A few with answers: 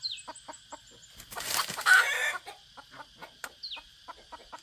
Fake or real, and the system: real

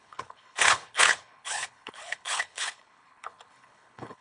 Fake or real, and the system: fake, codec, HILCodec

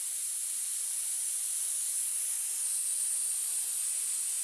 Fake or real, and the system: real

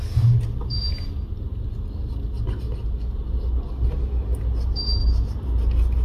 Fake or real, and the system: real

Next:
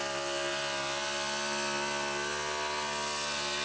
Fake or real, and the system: real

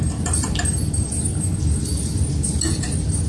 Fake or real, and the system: real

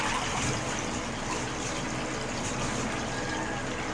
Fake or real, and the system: real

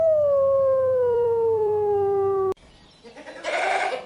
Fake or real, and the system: fake, vocoder, BigVGAN v2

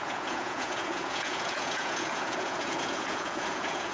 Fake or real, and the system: fake, vocoder, Vocos